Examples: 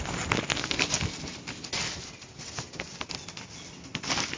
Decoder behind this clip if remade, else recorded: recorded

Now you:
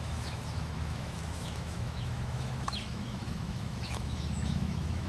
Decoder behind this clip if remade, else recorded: remade, autoencoder, DAC-VAE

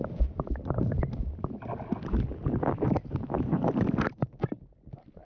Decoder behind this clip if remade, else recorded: recorded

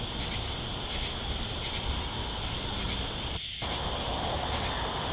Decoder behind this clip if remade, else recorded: recorded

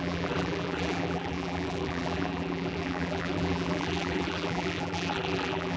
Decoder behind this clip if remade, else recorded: remade, vocoder, BigVGAN v2